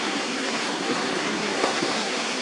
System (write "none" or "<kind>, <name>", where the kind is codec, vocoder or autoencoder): codec, SNAC